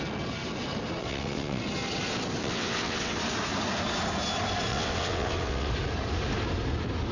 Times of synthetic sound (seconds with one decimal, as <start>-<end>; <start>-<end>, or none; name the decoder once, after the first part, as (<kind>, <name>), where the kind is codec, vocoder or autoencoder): 1.0-1.6 (vocoder, WaveNeXt); 2.4-3.2; 4.7-5.7

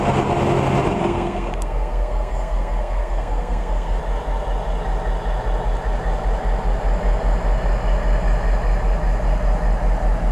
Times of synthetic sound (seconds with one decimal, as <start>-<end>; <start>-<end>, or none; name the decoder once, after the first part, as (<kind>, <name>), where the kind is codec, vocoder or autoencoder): 1.0-4.0 (codec, SNAC)

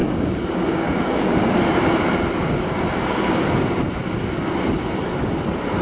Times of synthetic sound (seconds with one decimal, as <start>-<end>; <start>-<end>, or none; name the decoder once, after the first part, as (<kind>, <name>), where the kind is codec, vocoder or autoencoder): 0.0-1.6 (codec, DAC)